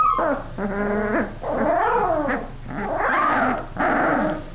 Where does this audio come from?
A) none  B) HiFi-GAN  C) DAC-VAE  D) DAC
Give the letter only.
A